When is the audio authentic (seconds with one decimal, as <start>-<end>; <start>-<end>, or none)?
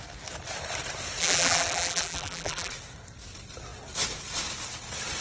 0.0-1.2; 2.7-5.2